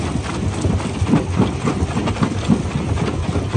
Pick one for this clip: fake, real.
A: real